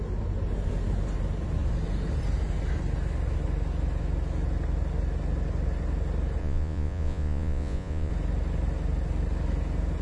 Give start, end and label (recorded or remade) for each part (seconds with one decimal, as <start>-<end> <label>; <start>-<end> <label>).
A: 0.0-6.4 recorded; 6.4-8.1 remade; 8.1-10.0 recorded